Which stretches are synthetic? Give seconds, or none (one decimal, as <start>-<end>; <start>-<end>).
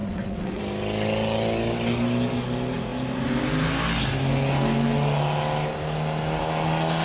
0.0-0.6